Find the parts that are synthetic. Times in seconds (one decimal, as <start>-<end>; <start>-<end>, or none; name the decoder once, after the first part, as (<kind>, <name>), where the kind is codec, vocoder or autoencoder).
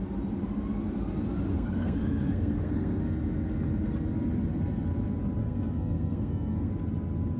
1.5-3.0 (codec, SNAC); 5.4-6.7